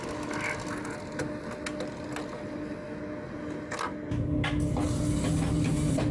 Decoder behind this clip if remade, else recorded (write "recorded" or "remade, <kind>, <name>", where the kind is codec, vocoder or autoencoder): recorded